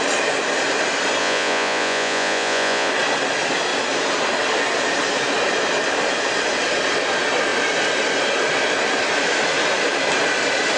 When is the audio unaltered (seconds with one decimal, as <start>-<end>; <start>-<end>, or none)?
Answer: 0.0-1.2; 2.9-10.8